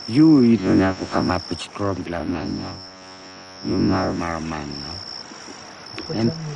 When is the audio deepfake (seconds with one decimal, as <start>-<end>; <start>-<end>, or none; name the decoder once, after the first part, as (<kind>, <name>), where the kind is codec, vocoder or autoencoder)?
0.6-1.3 (vocoder, Vocos); 2.2-4.2